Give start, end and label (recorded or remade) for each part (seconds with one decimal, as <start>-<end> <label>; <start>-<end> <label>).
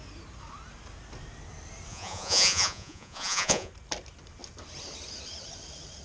0.0-1.9 recorded; 1.9-3.7 remade; 3.7-6.0 recorded